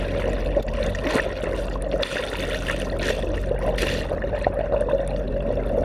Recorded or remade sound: recorded